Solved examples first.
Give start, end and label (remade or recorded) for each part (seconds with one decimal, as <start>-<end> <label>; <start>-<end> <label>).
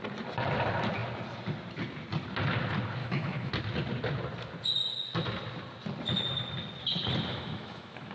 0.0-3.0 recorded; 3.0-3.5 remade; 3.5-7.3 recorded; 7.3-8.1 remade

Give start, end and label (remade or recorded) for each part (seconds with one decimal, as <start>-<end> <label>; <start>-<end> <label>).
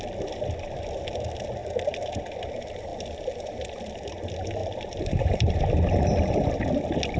0.0-4.6 recorded; 4.6-5.6 remade; 5.6-7.2 recorded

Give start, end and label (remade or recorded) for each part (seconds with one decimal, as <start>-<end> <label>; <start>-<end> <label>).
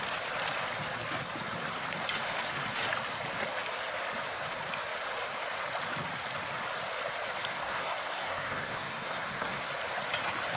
0.0-7.5 recorded; 7.5-9.7 remade; 9.7-10.6 recorded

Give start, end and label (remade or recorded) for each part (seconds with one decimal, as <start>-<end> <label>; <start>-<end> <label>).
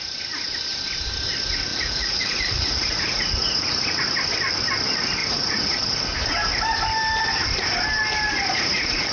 0.0-1.7 recorded; 1.7-4.0 remade; 4.0-5.2 recorded; 5.2-5.8 remade; 5.8-8.3 recorded; 8.3-9.1 remade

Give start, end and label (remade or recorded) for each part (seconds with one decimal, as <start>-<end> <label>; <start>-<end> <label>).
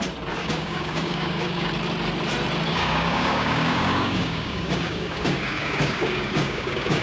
0.0-0.4 recorded; 0.4-1.7 remade; 1.7-2.7 recorded; 2.7-7.0 remade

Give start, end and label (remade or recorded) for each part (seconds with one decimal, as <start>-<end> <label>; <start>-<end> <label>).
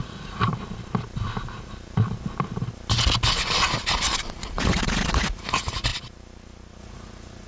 0.0-0.5 remade; 0.5-4.2 recorded; 4.2-5.9 remade; 5.9-6.8 recorded; 6.8-7.5 remade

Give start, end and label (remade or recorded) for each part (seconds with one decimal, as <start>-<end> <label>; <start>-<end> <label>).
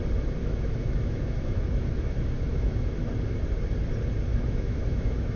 0.0-0.4 recorded; 0.4-2.1 remade; 2.1-2.5 recorded; 2.5-3.1 remade; 3.1-4.3 recorded; 4.3-5.4 remade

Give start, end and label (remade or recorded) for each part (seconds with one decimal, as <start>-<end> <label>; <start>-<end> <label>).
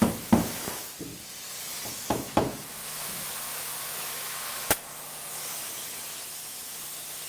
0.0-1.1 remade; 1.1-1.9 recorded; 1.9-7.3 remade